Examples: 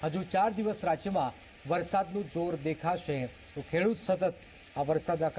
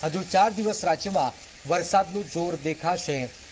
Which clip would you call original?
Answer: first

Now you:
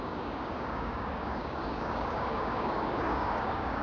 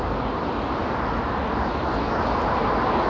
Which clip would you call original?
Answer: second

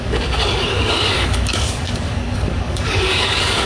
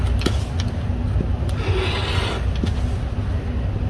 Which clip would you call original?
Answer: second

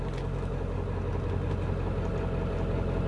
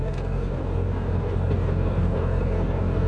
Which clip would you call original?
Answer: first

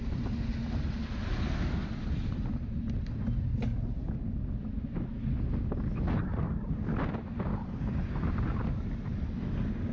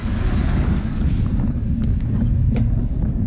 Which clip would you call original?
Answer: first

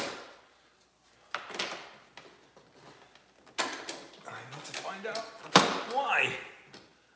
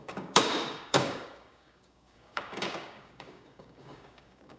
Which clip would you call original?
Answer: first